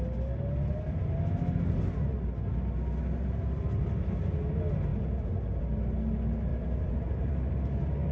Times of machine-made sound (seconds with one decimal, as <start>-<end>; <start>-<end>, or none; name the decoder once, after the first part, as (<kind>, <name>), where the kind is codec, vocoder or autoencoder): 6.5-7.5 (vocoder, BigVGAN v2)